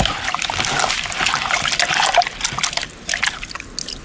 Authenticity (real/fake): real